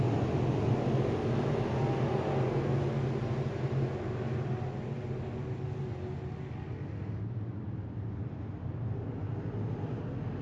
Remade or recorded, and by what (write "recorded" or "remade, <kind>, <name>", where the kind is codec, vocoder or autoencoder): recorded